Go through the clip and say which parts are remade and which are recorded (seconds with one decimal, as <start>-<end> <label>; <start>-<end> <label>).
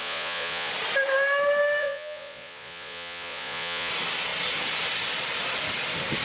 0.0-0.7 remade; 0.7-1.8 recorded; 1.8-3.9 remade; 3.9-6.2 recorded